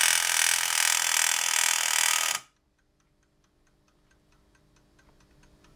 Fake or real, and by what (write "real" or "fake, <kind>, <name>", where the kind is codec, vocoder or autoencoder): real